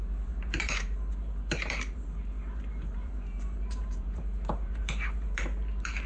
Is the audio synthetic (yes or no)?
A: yes